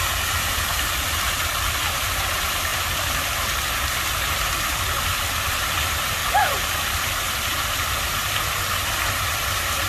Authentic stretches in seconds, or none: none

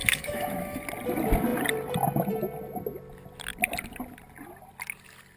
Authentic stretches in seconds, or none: 0.8-5.4

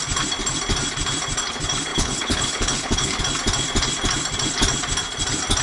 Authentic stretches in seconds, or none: 0.0-1.9; 3.2-5.6

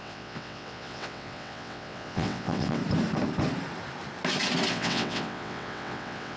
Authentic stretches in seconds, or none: 2.8-4.7

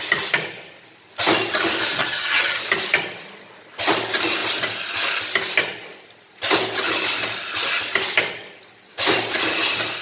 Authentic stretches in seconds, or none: 0.0-2.0; 2.6-10.0